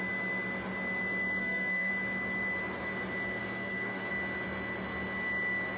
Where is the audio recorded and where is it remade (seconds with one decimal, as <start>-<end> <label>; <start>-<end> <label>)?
0.0-1.4 recorded; 1.4-1.9 remade; 1.9-3.4 recorded; 3.4-4.1 remade; 4.1-5.8 recorded